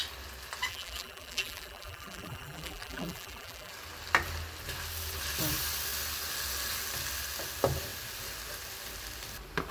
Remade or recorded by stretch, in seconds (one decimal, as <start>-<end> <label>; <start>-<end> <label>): 0.0-0.7 recorded; 0.7-3.7 remade; 3.7-9.7 recorded